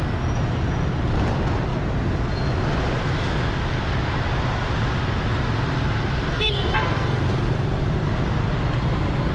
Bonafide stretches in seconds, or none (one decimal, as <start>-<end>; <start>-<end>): 0.0-6.3; 7.2-9.3